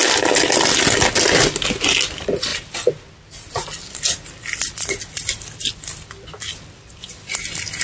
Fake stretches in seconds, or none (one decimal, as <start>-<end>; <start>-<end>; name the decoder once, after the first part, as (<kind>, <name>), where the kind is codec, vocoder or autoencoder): none